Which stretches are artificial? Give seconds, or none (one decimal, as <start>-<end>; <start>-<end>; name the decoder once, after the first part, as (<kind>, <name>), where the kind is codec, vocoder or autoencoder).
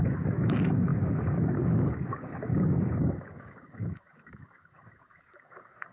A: 0.0-5.9 (codec, DAC)